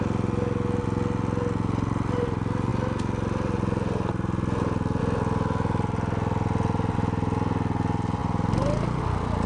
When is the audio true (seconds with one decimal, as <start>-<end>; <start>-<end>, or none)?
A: 0.0-9.5